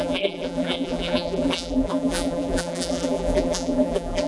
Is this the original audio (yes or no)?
no